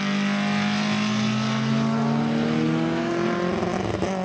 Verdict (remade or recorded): recorded